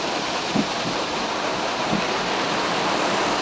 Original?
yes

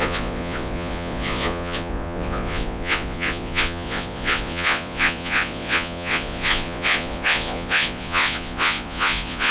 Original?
no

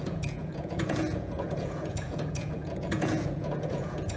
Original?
no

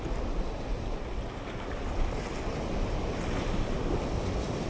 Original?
yes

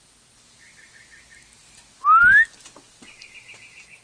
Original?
yes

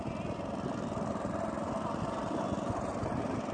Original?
yes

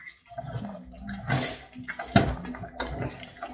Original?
yes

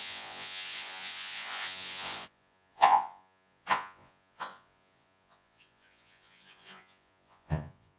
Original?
no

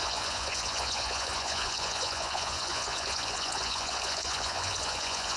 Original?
no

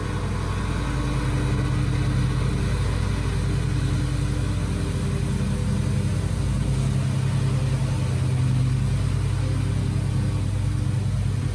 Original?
yes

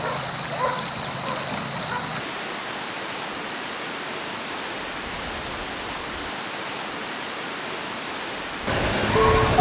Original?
yes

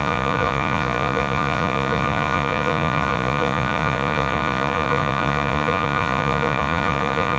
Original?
no